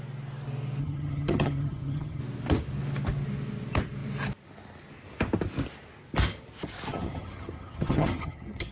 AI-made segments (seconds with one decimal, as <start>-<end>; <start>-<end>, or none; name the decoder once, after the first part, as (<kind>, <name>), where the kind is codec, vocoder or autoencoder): 0.8-2.2 (vocoder, HiFi-GAN); 6.9-8.7